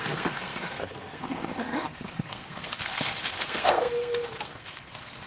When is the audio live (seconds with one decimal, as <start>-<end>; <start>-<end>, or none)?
none